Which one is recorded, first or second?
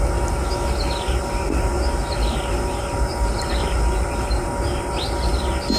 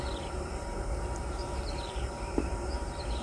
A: first